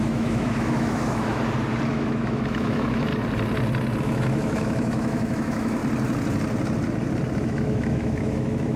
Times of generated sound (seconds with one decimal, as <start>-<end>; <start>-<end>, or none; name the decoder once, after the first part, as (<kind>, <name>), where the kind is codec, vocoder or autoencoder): 0.0-1.4 (autoencoder, DAC-VAE); 1.9-3.1; 4.0-5.8; 7.4-8.8